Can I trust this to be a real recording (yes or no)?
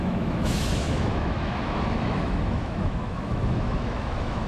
no